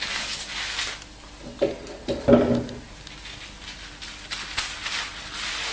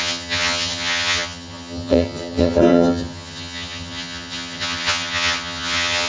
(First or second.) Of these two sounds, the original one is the first